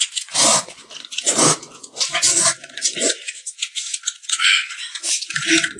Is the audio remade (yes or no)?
yes